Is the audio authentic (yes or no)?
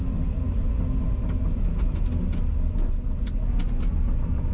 yes